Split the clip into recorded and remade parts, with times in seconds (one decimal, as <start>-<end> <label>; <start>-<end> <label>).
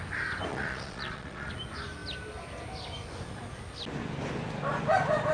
0.0-0.5 recorded; 0.5-1.5 remade; 1.5-5.3 recorded